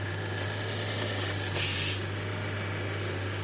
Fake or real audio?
real